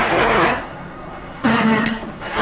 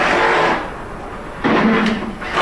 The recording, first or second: second